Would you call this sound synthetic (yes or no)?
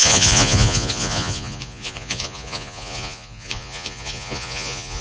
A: yes